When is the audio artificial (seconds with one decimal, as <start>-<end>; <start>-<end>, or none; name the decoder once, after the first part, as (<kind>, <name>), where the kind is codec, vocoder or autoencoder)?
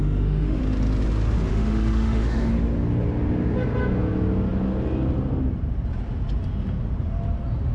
0.0-0.6 (autoencoder, DAC-VAE); 1.5-2.5